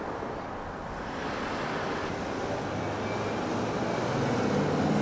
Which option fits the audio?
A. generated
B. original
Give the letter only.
B